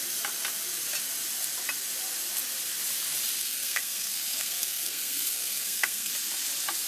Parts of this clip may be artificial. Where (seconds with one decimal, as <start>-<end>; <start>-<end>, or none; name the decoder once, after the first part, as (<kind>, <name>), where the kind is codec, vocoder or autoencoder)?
3.4-6.1 (codec, SNAC)